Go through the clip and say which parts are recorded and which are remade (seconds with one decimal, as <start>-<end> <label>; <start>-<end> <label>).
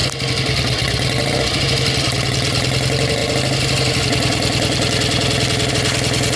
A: 0.0-6.4 recorded